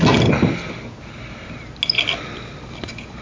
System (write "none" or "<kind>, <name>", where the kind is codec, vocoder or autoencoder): none